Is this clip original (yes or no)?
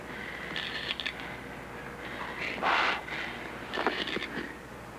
yes